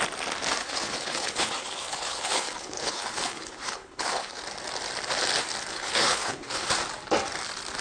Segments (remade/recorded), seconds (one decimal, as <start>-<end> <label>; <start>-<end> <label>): 0.0-0.6 recorded; 0.6-4.4 remade; 4.4-5.7 recorded; 5.7-6.7 remade; 6.7-7.8 recorded